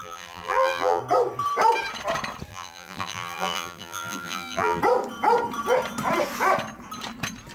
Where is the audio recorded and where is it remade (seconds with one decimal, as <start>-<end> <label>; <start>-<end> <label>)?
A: 0.0-1.0 remade; 1.0-2.5 recorded; 2.5-4.8 remade; 4.8-7.5 recorded